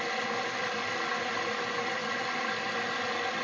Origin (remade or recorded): recorded